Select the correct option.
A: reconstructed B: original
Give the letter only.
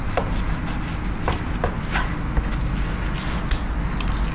B